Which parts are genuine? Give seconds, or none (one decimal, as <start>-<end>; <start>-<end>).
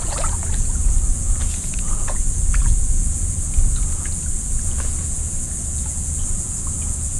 none